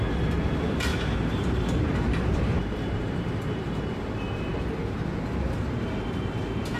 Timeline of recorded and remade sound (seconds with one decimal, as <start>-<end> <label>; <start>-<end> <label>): 0.0-0.9 recorded; 0.9-3.8 remade; 3.8-6.8 recorded